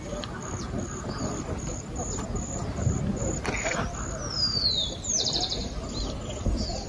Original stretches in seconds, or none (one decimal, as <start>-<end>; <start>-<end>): 0.0-6.9